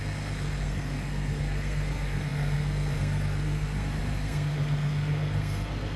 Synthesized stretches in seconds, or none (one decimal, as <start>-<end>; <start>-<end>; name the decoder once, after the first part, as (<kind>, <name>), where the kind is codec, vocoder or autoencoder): 0.0-6.0 (codec, SNAC)

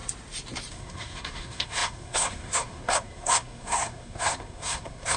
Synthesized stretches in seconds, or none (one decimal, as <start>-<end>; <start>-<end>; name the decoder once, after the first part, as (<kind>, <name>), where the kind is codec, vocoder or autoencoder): 0.7-5.2 (codec, SNAC)

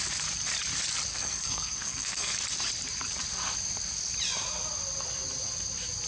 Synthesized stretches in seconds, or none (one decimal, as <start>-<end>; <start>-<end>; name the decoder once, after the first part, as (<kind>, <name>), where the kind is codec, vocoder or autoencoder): 1.1-2.4 (codec, SNAC)

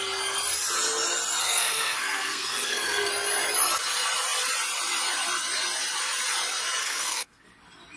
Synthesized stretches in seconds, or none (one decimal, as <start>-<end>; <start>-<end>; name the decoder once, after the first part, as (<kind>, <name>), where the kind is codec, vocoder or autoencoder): 1.4-3.1 (codec, SNAC); 6.8-7.4

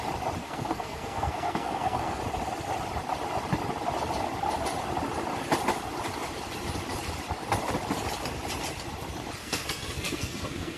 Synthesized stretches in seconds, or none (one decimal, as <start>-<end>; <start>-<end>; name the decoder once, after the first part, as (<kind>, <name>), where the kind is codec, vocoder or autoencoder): 0.4-2.2 (codec, SNAC); 9.4-10.8

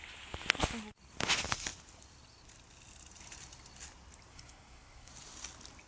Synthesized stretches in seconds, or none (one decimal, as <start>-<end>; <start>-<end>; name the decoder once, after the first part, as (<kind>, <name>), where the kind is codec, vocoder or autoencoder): 4.3-5.1 (codec, SNAC)